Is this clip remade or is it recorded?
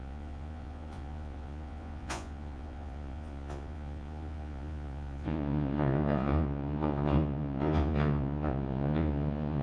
remade